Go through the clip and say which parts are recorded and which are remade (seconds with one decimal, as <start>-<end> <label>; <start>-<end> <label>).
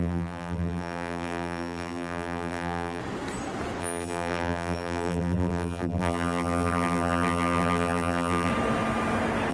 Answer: 0.0-3.0 remade; 3.0-3.8 recorded; 3.8-8.5 remade; 8.5-9.5 recorded